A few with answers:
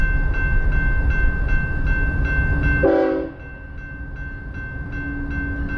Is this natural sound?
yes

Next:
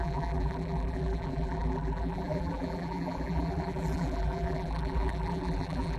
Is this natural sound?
no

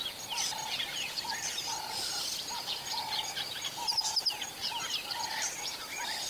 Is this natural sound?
yes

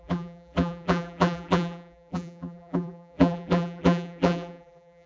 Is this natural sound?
no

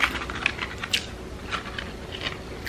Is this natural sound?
yes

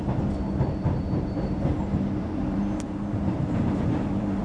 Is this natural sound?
no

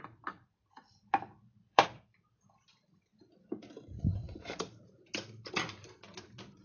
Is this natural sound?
no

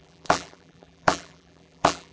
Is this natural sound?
no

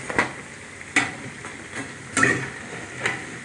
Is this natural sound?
yes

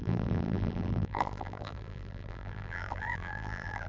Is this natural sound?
no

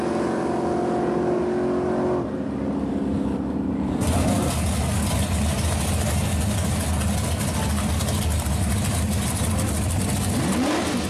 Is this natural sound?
yes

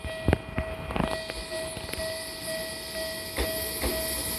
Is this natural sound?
yes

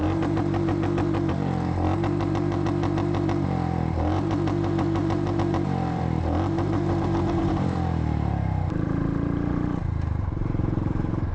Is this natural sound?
no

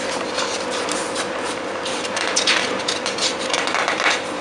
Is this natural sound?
no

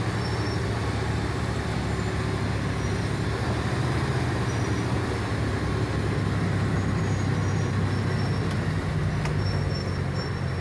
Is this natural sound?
yes